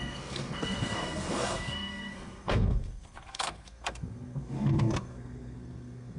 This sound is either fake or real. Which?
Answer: fake